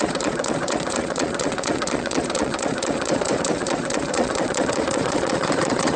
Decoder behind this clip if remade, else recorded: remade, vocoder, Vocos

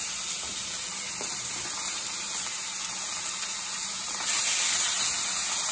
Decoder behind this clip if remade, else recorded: remade, vocoder, BigVGAN v2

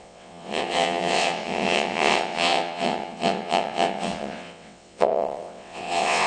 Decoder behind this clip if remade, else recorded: remade, vocoder, WaveNeXt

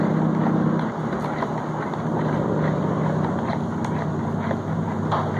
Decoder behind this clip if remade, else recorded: recorded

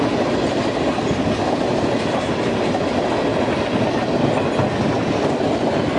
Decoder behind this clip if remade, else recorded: recorded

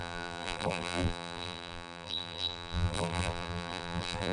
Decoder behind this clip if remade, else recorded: remade, vocoder, BigVGAN v2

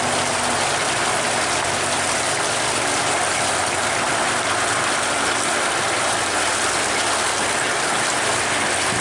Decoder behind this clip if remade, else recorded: recorded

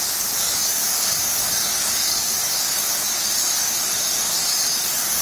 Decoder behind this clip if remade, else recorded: remade, codec, DAC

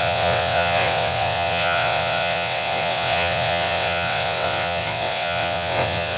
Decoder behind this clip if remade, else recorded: remade, vocoder, WaveNeXt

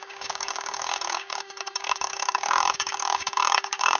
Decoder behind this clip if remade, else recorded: remade, codec, DAC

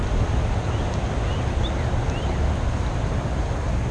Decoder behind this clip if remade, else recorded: recorded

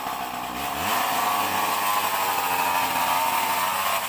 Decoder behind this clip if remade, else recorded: recorded